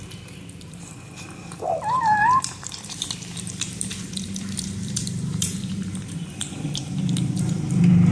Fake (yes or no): yes